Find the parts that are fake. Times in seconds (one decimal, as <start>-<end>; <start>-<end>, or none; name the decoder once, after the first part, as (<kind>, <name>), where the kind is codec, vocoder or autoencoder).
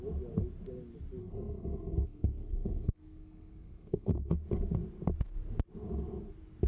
1.2-4.3 (codec, SNAC)